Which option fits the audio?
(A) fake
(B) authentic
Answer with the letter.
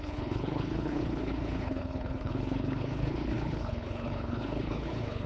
A